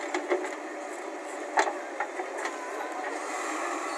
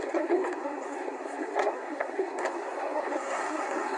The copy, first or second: second